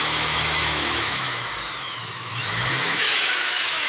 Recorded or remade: remade